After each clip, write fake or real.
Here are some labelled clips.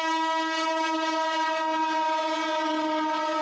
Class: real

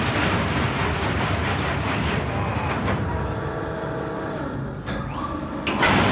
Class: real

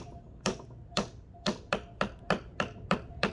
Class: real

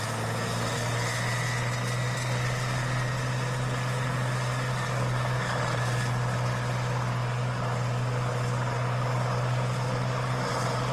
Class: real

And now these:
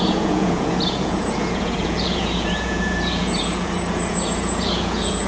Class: fake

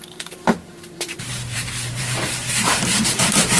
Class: fake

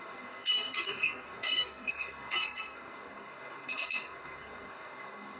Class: fake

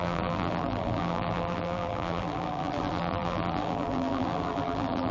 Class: fake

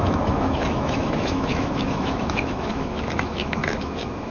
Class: fake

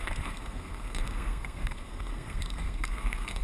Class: fake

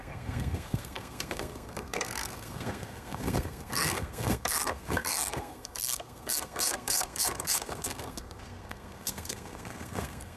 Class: fake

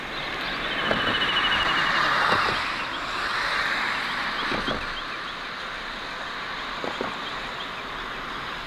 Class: real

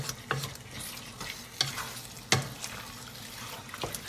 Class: real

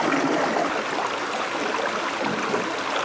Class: real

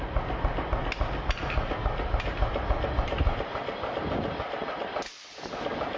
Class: real